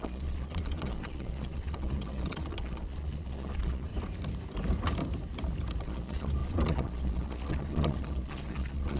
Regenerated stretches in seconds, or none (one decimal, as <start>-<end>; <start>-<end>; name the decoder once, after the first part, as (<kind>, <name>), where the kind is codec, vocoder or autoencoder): 0.0-3.9 (vocoder, Vocos); 5.8-9.0